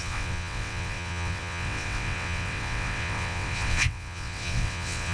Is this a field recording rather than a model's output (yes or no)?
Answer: no